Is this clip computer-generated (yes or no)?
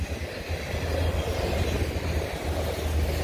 no